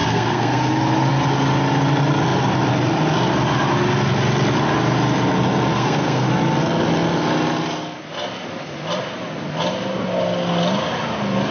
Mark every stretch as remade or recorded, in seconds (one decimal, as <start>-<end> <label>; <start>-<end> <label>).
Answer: 0.0-0.7 remade; 0.7-5.7 recorded; 5.7-6.3 remade; 6.3-11.5 recorded